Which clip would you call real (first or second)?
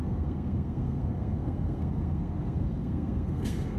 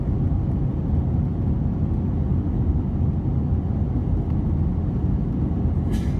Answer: second